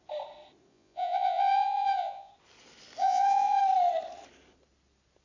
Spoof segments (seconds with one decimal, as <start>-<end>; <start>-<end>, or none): 0.7-2.3; 3.0-3.6